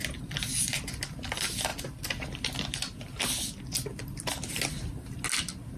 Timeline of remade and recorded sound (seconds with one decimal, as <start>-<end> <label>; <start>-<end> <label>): 0.0-5.8 recorded